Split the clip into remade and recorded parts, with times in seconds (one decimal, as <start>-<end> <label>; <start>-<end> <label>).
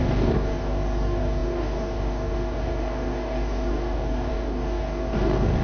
0.0-5.6 remade